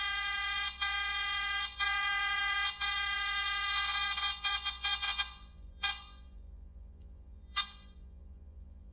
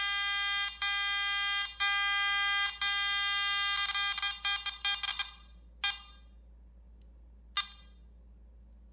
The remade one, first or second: first